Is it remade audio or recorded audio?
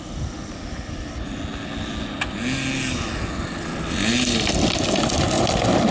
recorded